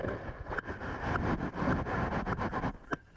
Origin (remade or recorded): recorded